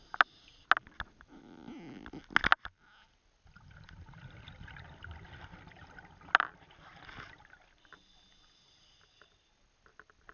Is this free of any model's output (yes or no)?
yes